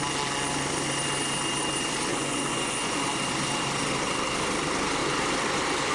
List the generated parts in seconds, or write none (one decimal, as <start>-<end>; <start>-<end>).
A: 2.1-3.0